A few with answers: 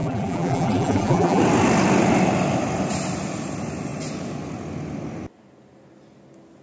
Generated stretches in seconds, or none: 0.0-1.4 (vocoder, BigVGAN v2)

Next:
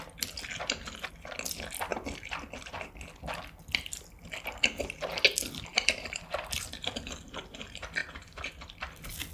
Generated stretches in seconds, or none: 5.7-6.9 (vocoder, BigVGAN v2)

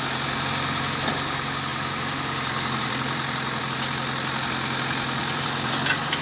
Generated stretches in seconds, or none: 1.7-3.6 (vocoder, BigVGAN v2); 5.2-6.2

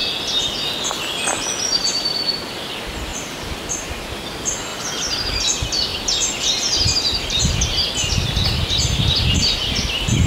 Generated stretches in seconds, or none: 3.1-3.9 (vocoder, BigVGAN v2); 4.7-5.4

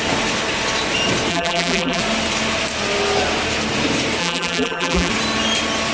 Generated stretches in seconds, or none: 1.3-2.0 (vocoder, BigVGAN v2); 4.2-5.1

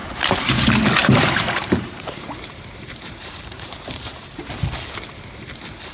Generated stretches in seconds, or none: 0.0-0.6 (vocoder, BigVGAN v2); 1.0-4.5

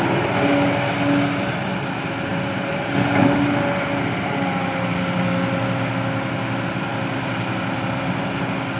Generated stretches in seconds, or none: 2.3-2.9 (vocoder, BigVGAN v2)